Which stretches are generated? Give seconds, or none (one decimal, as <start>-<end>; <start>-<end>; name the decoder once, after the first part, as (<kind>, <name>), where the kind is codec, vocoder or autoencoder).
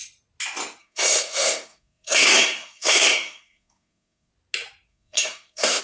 0.8-4.3 (codec, SNAC); 4.9-5.8